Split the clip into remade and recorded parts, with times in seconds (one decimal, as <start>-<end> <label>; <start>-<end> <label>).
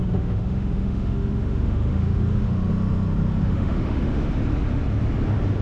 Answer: 0.0-2.7 remade; 2.7-3.4 recorded; 3.4-4.3 remade; 4.3-5.6 recorded